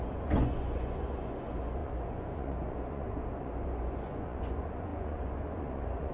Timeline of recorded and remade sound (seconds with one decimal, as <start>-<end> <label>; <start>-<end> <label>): 0.0-6.1 remade